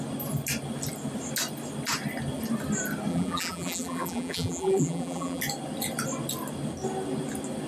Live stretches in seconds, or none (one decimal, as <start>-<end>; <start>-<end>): 0.0-3.1; 5.4-7.7